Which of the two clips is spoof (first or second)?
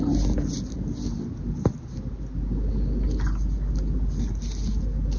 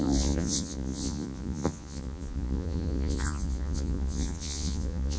second